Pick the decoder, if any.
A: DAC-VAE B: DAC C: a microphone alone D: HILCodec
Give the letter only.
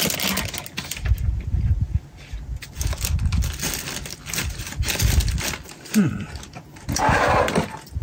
C